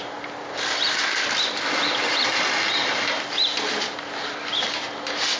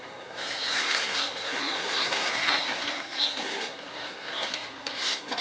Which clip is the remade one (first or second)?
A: second